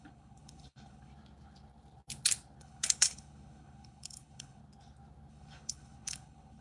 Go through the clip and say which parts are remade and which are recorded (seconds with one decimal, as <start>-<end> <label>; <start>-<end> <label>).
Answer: 0.0-1.1 remade; 1.1-2.6 recorded; 2.6-4.6 remade; 4.6-5.3 recorded; 5.3-6.6 remade